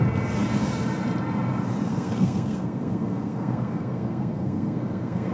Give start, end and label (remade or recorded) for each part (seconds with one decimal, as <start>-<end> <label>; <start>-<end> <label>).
0.0-1.9 recorded; 1.9-5.3 remade

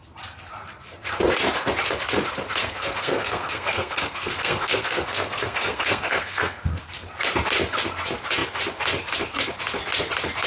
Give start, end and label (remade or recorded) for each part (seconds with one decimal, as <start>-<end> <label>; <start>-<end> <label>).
0.0-2.6 recorded; 2.6-6.8 remade; 6.8-10.5 recorded

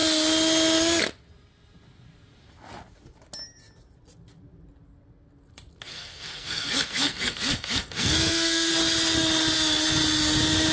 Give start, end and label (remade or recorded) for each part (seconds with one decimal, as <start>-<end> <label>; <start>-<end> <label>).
0.0-5.9 recorded; 5.9-8.7 remade; 8.7-10.7 recorded

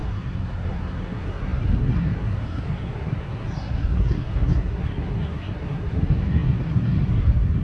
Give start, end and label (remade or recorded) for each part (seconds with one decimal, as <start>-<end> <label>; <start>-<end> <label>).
0.0-7.6 remade